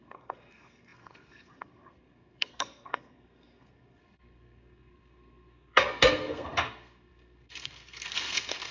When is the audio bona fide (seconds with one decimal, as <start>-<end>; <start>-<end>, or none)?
none